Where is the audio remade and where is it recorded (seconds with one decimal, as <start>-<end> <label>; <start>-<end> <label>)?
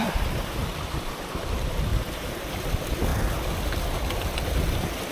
0.0-0.6 recorded; 0.6-1.2 remade; 1.2-1.9 recorded; 1.9-2.5 remade; 2.5-5.1 recorded